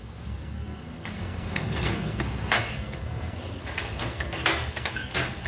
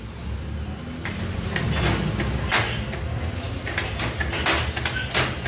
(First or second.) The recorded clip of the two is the second